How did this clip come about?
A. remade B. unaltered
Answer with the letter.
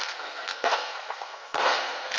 A